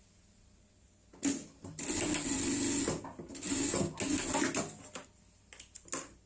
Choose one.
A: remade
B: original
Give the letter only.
B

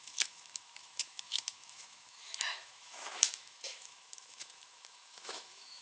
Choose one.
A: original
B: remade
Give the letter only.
B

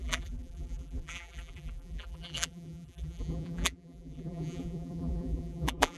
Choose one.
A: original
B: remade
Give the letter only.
B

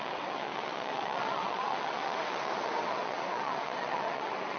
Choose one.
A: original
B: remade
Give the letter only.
B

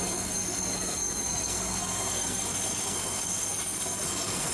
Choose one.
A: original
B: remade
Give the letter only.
B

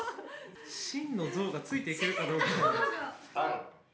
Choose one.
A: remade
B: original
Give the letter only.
B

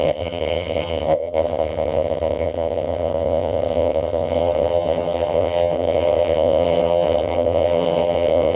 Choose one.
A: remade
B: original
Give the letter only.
A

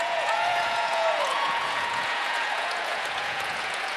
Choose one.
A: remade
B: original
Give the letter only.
A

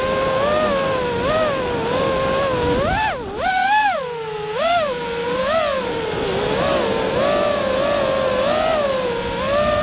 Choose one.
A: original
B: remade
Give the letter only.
A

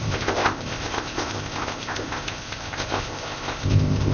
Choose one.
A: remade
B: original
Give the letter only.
A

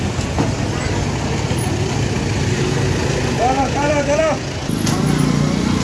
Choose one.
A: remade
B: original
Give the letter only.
B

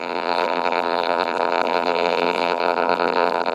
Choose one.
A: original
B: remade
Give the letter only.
B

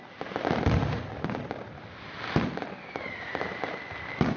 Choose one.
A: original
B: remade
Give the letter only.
A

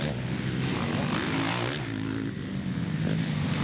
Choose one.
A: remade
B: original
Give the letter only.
B